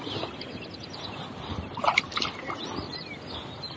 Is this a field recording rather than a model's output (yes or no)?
yes